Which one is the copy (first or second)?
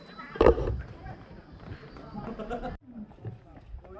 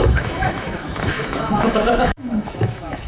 second